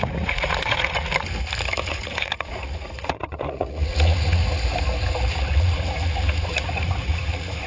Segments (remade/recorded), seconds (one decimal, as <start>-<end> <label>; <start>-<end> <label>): 0.0-1.1 remade; 1.1-1.9 recorded; 1.9-4.4 remade; 4.4-5.3 recorded; 5.3-7.7 remade